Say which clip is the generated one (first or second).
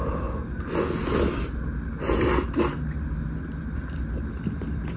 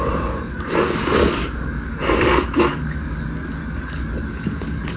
second